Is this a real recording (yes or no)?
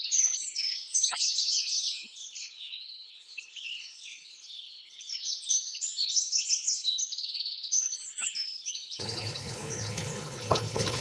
no